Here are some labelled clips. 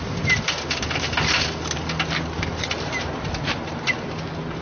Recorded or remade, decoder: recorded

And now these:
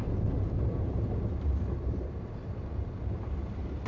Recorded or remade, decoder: recorded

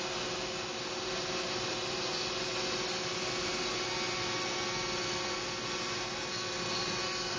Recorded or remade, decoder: recorded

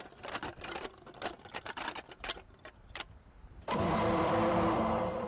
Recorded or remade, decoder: remade, vocoder, BigVGAN v2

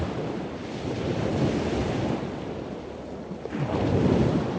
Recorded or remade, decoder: recorded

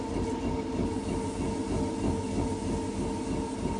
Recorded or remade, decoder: recorded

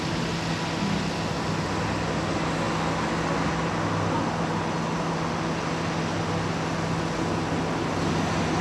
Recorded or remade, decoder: recorded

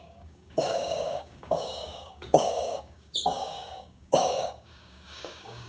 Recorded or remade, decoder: remade, codec, DAC